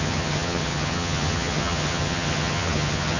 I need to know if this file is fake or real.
fake